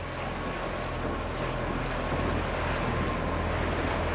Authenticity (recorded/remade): recorded